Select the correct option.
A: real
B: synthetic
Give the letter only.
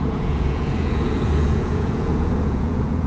B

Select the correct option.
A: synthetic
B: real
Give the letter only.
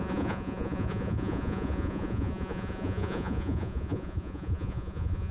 A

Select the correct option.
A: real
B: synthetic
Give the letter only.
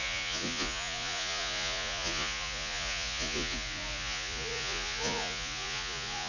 B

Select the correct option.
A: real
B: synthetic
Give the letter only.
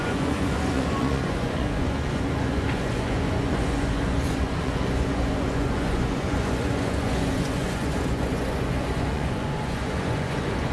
B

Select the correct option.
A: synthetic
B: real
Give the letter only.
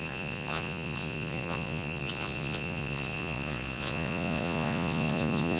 A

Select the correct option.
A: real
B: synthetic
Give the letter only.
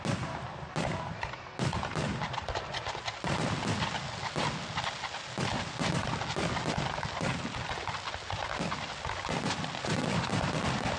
A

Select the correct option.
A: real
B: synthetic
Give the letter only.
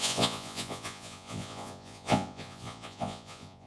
B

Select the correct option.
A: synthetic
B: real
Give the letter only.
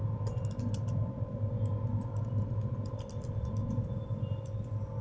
B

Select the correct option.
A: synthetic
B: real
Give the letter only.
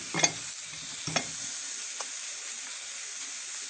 B